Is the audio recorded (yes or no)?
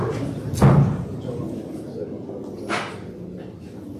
yes